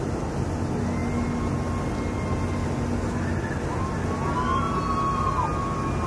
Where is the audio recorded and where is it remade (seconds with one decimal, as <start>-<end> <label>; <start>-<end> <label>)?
0.0-6.1 recorded